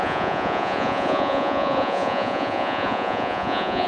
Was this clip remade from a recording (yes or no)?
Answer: yes